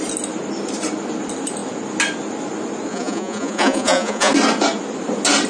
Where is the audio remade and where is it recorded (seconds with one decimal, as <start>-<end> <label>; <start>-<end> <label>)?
0.0-2.9 recorded; 2.9-4.3 remade; 4.3-5.5 recorded